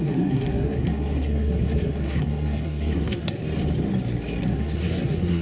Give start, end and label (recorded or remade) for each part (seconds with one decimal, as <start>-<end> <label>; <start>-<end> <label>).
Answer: 0.0-3.4 remade; 3.4-4.4 recorded; 4.4-5.4 remade